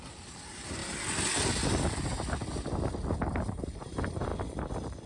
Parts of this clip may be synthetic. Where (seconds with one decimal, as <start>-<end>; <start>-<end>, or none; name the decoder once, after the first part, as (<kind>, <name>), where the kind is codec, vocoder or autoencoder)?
0.0-0.8 (vocoder, BigVGAN v2); 3.5-4.3